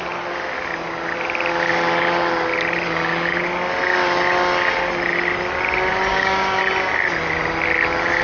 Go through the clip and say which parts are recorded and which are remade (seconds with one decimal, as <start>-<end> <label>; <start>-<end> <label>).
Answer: 0.0-6.1 recorded; 6.1-6.6 remade; 6.6-8.2 recorded